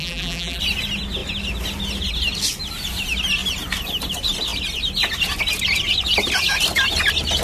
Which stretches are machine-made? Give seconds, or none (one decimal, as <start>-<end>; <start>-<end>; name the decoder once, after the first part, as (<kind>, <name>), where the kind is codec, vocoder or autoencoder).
0.0-0.6 (vocoder, BigVGAN v2)